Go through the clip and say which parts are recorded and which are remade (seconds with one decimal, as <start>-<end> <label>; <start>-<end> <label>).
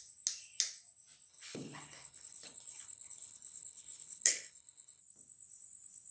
0.0-1.3 recorded; 1.3-5.0 remade; 5.0-6.1 recorded